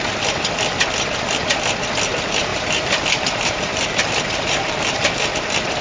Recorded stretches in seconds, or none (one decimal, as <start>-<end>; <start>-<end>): 0.0-2.5; 5.3-5.8

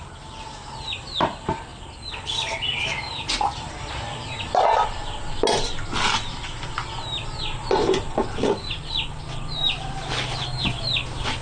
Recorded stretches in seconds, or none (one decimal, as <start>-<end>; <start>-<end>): 0.0-11.4